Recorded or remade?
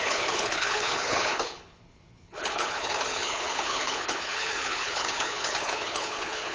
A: remade